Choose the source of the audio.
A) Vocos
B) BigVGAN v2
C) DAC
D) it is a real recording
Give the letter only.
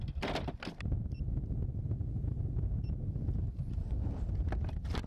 D